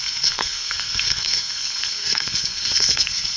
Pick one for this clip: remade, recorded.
remade